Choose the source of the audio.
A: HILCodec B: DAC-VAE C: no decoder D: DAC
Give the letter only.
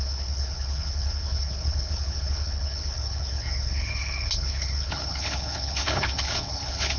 A